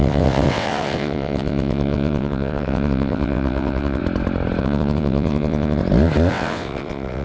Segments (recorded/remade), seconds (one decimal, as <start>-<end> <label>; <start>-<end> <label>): 0.0-4.0 remade; 4.0-4.6 recorded; 4.6-5.8 remade; 5.8-6.3 recorded; 6.3-7.2 remade